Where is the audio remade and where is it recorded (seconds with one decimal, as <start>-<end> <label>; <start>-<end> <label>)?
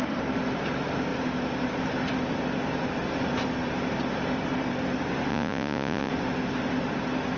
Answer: 0.0-5.3 recorded; 5.3-6.1 remade; 6.1-7.4 recorded